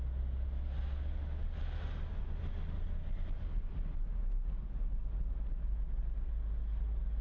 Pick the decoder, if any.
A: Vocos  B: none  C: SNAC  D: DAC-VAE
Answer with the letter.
B